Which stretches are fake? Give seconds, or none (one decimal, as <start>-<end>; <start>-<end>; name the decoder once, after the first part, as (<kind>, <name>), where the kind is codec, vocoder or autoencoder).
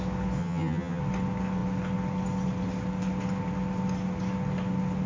0.4-1.0 (vocoder, HiFi-GAN)